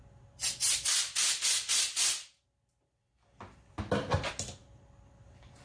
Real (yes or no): yes